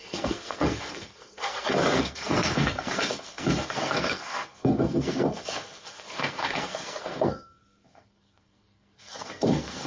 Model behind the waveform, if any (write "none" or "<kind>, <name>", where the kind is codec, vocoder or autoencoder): codec, SNAC